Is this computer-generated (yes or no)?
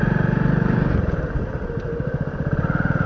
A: no